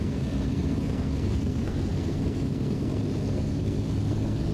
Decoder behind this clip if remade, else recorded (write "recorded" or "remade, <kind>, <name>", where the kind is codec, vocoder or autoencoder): remade, codec, SNAC